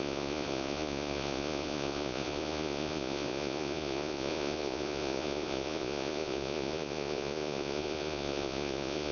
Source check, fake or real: fake